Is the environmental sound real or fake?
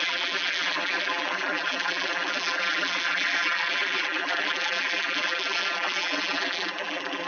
fake